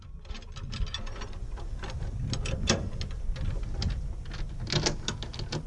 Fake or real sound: real